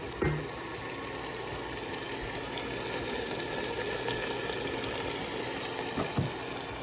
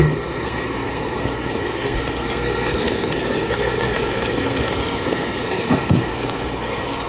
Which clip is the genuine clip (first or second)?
first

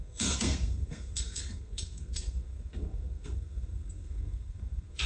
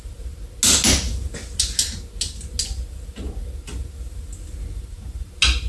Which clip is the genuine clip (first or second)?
second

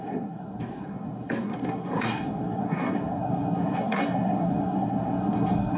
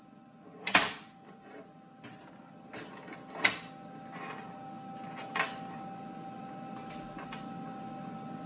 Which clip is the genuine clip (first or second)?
second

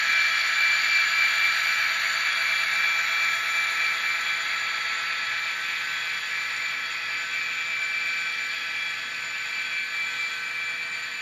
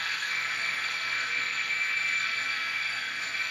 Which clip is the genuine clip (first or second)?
first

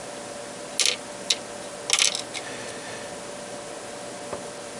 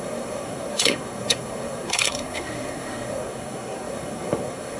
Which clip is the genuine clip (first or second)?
first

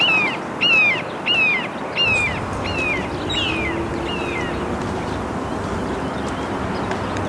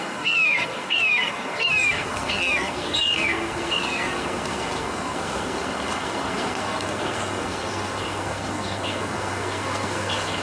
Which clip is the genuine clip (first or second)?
first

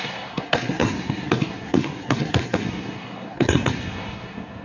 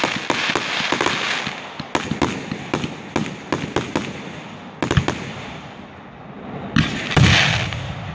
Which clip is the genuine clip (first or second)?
second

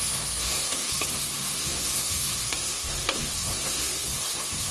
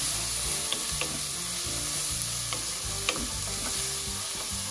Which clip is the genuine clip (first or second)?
second